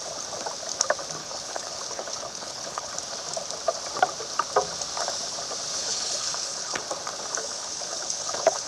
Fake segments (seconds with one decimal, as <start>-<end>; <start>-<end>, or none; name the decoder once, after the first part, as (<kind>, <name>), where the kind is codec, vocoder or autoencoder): 1.2-2.9 (codec, HILCodec); 5.8-6.8; 7.4-8.7